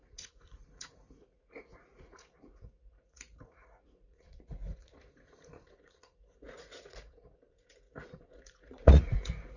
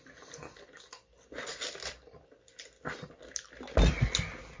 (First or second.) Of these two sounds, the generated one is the first